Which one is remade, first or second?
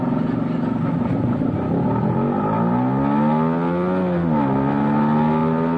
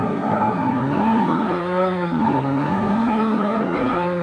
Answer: second